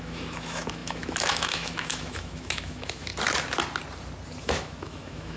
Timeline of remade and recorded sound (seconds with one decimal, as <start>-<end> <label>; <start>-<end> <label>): 0.0-3.1 remade; 3.1-4.4 recorded; 4.4-5.4 remade

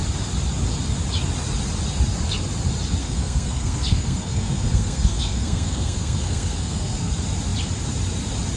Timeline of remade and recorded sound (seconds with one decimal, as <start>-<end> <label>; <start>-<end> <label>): 0.0-3.0 recorded; 3.0-7.1 remade; 7.1-8.6 recorded

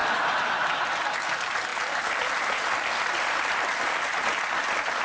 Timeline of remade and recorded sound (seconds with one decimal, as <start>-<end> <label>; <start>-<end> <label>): 0.0-5.0 recorded